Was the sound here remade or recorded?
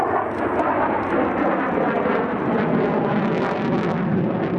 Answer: recorded